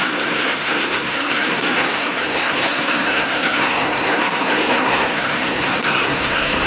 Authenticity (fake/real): fake